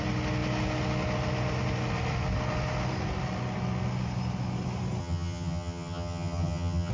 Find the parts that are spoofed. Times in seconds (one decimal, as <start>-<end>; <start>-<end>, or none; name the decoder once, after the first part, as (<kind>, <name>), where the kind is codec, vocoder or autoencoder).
5.0-6.9 (vocoder, HiFi-GAN)